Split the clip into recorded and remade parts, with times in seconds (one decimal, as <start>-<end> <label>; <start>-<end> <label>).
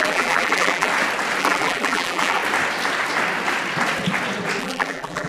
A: 0.0-0.9 remade; 0.9-1.4 recorded; 1.4-2.4 remade; 2.4-4.6 recorded; 4.6-5.3 remade